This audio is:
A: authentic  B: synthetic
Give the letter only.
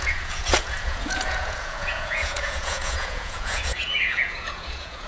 B